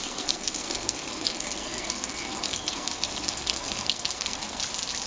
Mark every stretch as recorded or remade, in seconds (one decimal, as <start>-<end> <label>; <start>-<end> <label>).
0.0-4.6 remade; 4.6-5.1 recorded